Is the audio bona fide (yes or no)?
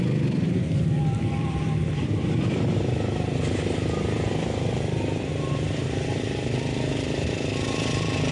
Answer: no